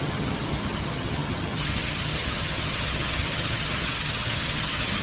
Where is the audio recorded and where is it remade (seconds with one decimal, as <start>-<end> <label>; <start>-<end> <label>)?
0.0-5.0 remade